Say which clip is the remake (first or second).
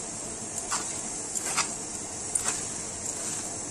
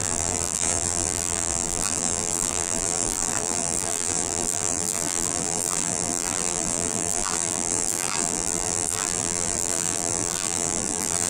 second